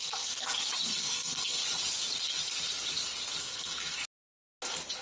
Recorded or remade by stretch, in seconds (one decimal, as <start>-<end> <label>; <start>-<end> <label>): 0.0-0.5 remade; 0.5-1.0 recorded; 1.0-1.6 remade; 1.6-3.4 recorded; 3.4-4.0 remade; 4.0-5.0 recorded